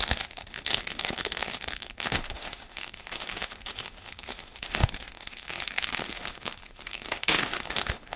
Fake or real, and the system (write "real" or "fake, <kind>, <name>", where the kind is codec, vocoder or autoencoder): fake, autoencoder, DAC-VAE